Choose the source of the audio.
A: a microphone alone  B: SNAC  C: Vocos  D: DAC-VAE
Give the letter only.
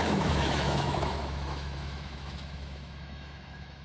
D